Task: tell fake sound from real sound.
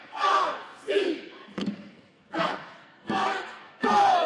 fake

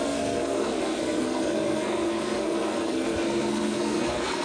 fake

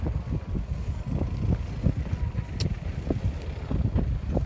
real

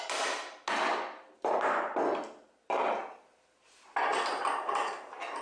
real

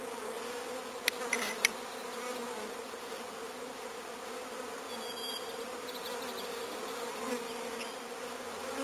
real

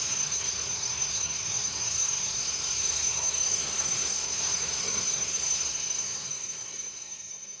fake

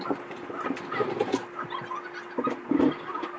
real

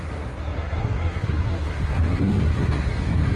fake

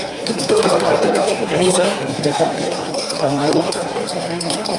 fake